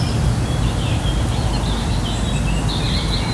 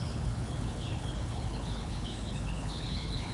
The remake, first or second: second